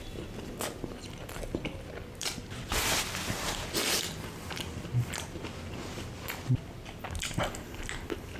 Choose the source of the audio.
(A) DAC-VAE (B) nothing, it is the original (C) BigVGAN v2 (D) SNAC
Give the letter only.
B